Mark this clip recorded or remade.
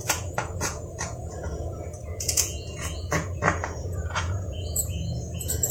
remade